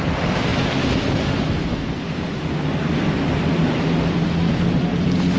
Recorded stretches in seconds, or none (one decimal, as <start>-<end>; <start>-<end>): 0.0-5.4